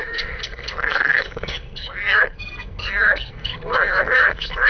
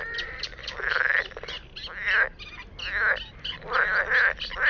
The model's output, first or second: first